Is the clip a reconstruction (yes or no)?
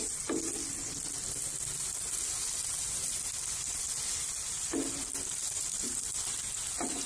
no